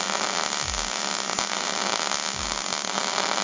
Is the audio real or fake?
real